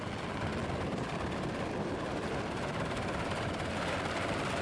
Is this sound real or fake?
fake